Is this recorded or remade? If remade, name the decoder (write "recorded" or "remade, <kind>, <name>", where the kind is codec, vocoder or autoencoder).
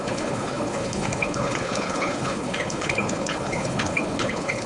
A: remade, codec, HILCodec